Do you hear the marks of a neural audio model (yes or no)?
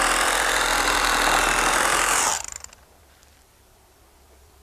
yes